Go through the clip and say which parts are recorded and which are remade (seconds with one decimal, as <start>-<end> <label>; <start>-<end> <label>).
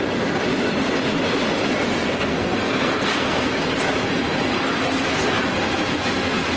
0.0-2.0 recorded; 2.0-3.5 remade; 3.5-6.6 recorded